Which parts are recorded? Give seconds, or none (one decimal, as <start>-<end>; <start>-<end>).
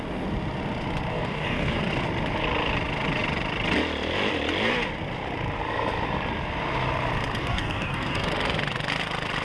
0.0-1.1; 1.8-7.4; 8.3-9.4